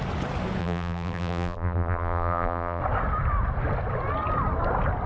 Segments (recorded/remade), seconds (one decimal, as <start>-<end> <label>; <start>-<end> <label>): 0.0-0.6 recorded; 0.6-2.8 remade; 2.8-5.1 recorded